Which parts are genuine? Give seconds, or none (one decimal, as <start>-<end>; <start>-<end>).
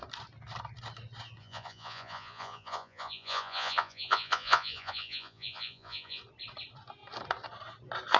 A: 0.0-1.4; 6.2-8.2